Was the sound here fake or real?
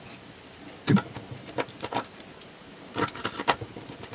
real